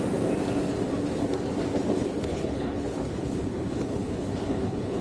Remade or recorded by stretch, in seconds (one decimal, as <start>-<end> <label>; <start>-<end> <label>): 0.0-1.8 recorded; 1.8-5.0 remade

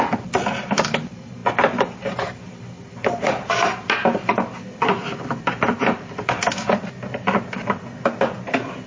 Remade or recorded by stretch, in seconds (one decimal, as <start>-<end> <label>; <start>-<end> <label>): 0.0-8.9 recorded

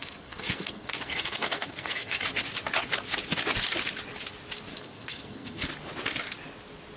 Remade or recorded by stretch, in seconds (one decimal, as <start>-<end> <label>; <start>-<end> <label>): 0.0-2.2 remade; 2.2-4.7 recorded; 4.7-5.6 remade; 5.6-7.0 recorded

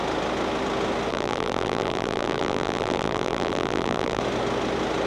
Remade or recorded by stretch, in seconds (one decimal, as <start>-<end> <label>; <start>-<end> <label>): 0.0-1.1 recorded; 1.1-4.2 remade; 4.2-5.1 recorded

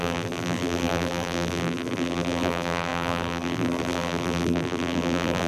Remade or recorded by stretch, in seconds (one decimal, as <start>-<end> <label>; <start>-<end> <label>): 0.0-5.5 remade

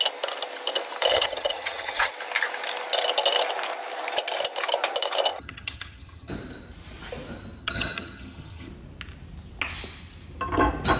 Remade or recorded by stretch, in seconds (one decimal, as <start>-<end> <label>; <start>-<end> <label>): 0.0-1.1 recorded; 1.1-2.1 remade; 2.1-5.3 recorded; 5.3-6.3 remade; 6.3-7.6 recorded; 7.6-8.7 remade; 8.7-11.0 recorded

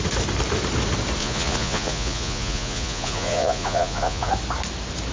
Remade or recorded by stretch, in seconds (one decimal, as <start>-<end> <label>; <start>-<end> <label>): 0.0-1.2 recorded; 1.2-4.3 remade; 4.3-5.1 recorded

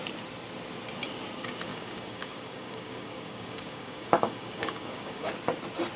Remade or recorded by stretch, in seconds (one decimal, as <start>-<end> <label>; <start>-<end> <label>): 0.0-1.7 recorded; 1.7-5.3 remade; 5.3-6.0 recorded